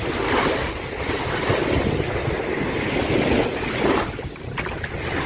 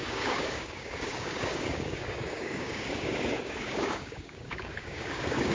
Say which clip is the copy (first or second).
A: second